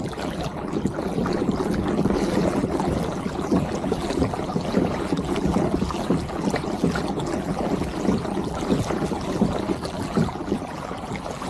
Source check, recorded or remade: remade